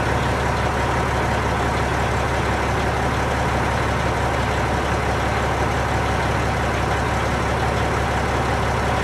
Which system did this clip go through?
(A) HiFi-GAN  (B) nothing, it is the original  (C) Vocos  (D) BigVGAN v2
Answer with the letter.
B